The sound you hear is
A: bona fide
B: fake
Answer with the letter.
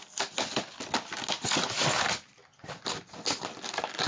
A